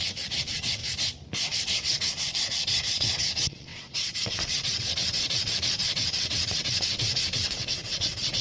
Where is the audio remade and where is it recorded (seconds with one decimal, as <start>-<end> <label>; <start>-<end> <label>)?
0.0-0.8 remade; 0.8-1.4 recorded; 1.4-8.4 remade